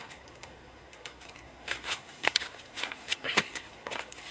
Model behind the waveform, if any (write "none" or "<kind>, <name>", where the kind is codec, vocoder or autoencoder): codec, SNAC